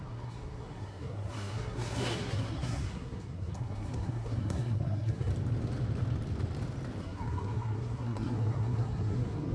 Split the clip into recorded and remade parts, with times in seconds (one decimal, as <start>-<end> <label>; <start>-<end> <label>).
0.0-5.3 remade; 5.3-7.0 recorded; 7.0-9.5 remade